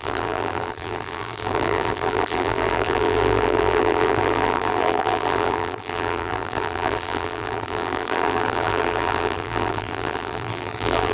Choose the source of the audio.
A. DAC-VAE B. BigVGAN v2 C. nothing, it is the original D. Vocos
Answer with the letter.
B